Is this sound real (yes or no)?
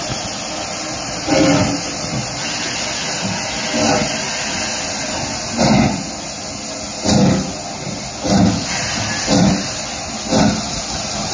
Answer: yes